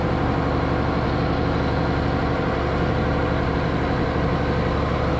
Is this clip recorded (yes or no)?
yes